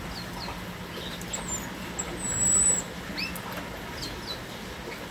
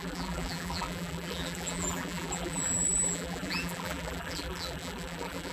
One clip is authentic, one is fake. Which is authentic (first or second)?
first